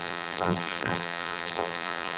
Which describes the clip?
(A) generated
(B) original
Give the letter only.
A